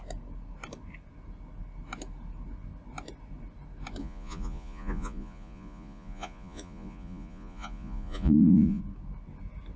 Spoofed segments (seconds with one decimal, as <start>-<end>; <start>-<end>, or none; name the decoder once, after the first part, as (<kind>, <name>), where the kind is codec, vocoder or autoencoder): 4.0-8.8 (vocoder, Vocos)